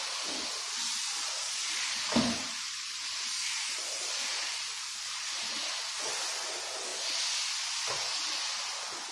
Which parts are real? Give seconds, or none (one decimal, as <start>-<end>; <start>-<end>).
0.0-0.8; 5.9-9.1